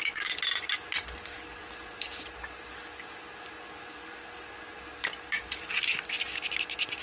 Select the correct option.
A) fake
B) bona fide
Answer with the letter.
B